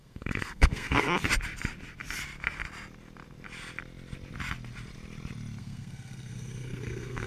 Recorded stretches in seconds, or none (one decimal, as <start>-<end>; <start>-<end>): 1.2-5.6

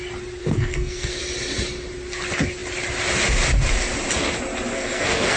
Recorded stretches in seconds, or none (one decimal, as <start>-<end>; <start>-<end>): 0.0-0.4; 1.2-4.7

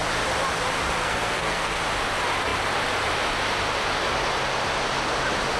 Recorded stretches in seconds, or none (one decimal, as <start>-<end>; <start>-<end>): 0.0-1.0; 1.8-5.6

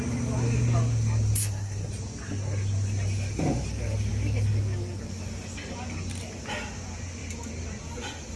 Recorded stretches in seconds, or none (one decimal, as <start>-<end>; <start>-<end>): 0.0-1.4; 1.9-8.4

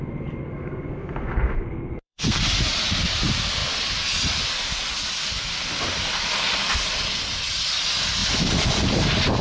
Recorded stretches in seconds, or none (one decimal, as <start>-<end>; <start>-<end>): 0.0-0.4; 2.4-9.4

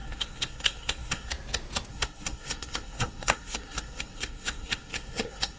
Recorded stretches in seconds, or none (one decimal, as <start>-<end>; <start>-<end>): 1.3-1.9